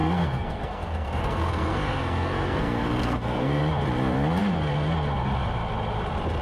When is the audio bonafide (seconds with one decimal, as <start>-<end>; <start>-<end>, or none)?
3.6-6.4